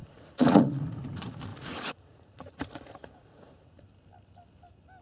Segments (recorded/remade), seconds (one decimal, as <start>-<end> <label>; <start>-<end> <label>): 0.0-1.0 remade; 1.0-1.5 recorded; 1.5-3.8 remade; 3.8-5.0 recorded